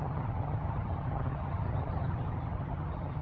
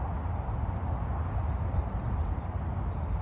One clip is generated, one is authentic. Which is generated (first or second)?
first